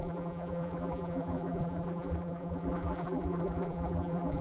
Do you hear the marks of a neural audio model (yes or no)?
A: yes